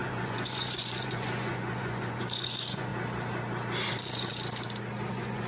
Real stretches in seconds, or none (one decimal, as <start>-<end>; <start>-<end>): 2.9-3.9; 4.3-5.1